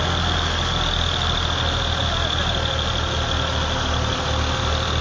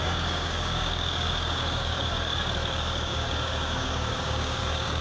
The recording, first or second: first